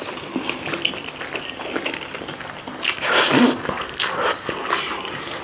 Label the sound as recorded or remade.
recorded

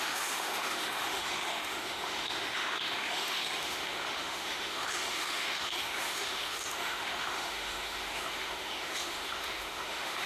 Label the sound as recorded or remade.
remade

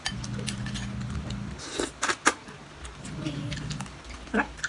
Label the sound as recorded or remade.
recorded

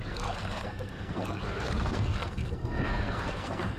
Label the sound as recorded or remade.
remade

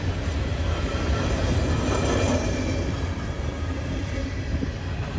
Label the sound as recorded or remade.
remade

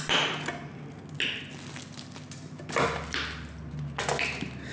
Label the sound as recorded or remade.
recorded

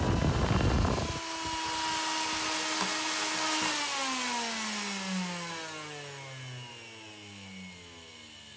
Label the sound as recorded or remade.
recorded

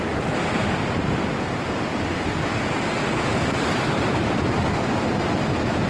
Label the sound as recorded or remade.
recorded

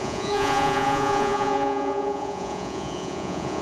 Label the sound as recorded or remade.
remade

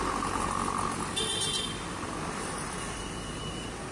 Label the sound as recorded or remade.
recorded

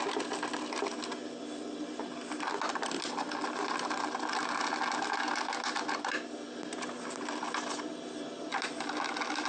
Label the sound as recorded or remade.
recorded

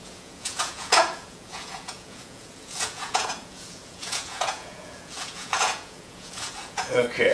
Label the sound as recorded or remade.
remade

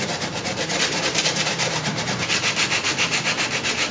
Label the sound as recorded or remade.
remade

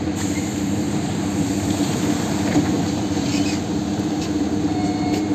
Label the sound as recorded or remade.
remade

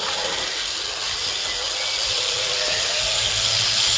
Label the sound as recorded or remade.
recorded